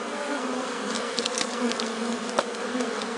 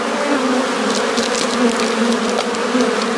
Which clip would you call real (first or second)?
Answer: second